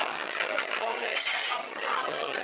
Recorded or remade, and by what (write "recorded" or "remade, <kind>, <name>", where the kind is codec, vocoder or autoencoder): remade, vocoder, HiFi-GAN